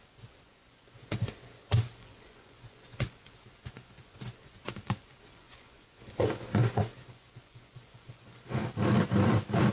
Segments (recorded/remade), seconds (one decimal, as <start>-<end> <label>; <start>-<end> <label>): 0.0-8.6 remade; 8.6-9.7 recorded